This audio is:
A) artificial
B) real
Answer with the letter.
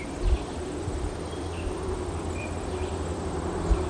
A